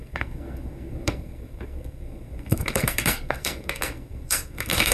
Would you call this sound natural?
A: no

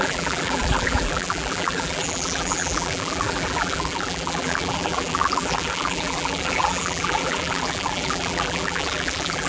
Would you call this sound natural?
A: no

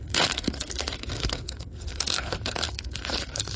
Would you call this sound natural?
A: no